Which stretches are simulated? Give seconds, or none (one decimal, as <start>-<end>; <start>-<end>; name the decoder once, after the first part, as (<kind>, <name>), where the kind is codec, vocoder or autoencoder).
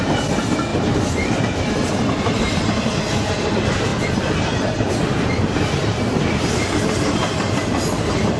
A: none